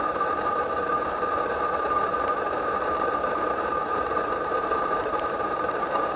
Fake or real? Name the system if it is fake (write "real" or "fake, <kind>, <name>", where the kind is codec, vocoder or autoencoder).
fake, vocoder, BigVGAN v2